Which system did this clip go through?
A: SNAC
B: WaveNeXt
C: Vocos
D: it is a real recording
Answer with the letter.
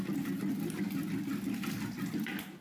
D